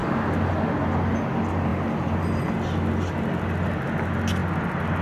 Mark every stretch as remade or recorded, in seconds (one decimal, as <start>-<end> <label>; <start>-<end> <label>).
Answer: 0.0-5.0 recorded